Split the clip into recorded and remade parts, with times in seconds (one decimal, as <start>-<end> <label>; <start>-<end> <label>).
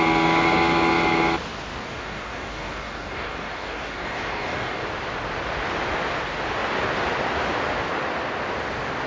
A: 0.0-1.8 recorded; 1.8-4.8 remade; 4.8-9.1 recorded